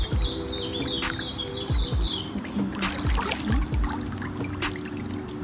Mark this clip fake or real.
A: real